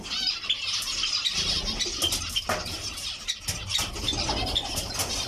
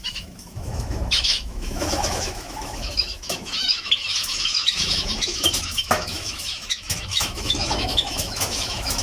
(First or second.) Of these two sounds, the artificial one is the second